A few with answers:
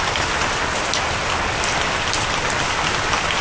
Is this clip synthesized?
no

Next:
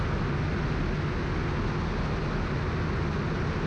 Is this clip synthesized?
no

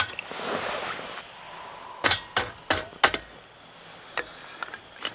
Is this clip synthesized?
no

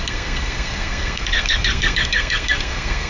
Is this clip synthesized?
yes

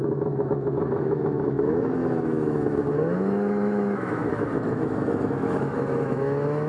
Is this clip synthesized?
yes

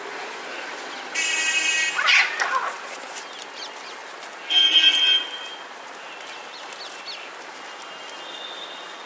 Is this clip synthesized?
no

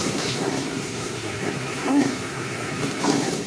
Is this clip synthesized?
yes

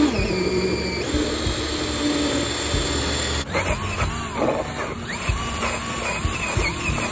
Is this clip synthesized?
no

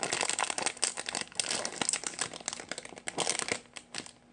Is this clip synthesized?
no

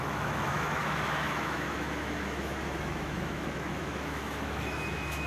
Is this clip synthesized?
yes